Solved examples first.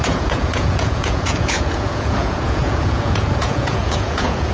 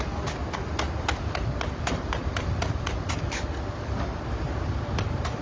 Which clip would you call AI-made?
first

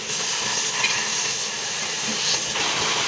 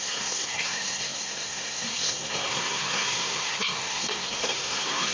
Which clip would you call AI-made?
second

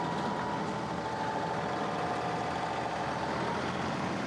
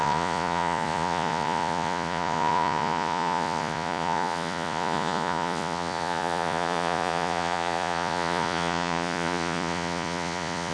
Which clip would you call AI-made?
second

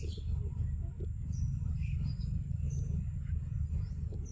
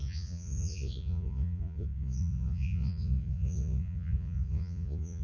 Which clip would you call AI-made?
second